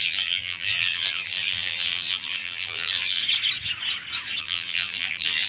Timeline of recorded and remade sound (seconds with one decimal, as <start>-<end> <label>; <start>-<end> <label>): 0.0-3.2 remade; 3.2-4.4 recorded; 4.4-5.5 remade